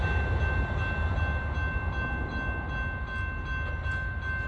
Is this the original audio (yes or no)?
yes